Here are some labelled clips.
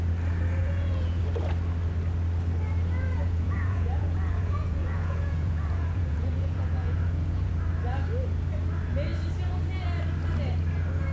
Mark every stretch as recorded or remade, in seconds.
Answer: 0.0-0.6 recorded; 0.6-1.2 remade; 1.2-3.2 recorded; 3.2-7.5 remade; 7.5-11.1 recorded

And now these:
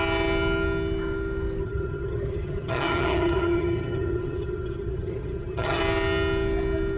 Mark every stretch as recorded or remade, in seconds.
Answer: 0.0-1.6 recorded; 1.6-5.8 remade; 5.8-7.0 recorded

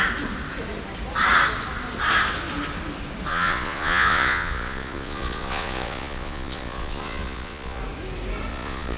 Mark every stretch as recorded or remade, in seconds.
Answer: 0.0-3.3 recorded; 3.3-7.8 remade; 7.8-8.5 recorded; 8.5-9.0 remade